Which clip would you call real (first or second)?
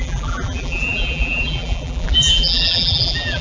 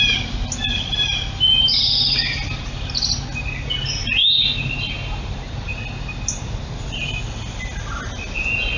second